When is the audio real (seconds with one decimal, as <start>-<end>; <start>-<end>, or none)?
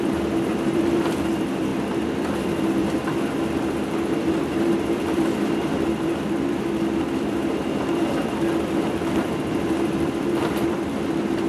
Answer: none